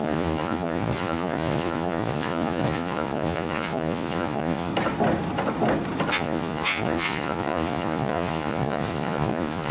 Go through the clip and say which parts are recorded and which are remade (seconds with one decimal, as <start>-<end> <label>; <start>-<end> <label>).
0.0-4.7 remade; 4.7-6.1 recorded; 6.1-9.7 remade